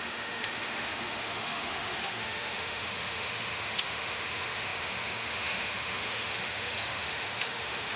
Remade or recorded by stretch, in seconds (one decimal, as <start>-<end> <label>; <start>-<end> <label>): 0.0-8.0 remade